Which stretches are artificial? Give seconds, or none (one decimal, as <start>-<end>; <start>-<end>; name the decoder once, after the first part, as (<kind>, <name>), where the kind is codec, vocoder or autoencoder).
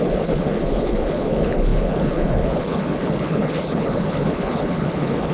0.0-5.3 (codec, HILCodec)